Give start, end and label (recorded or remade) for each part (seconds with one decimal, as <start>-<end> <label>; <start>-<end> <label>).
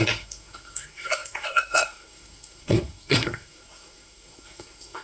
0.0-5.0 remade